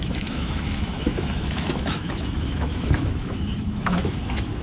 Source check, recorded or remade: remade